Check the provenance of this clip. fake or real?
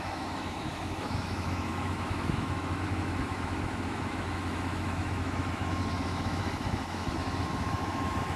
fake